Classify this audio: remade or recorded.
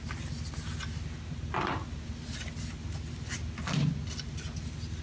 recorded